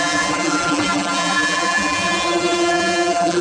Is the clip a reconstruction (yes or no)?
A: yes